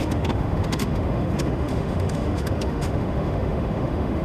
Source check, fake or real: fake